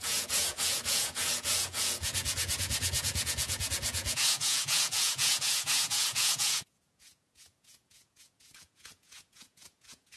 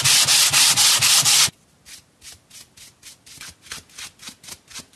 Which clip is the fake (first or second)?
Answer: first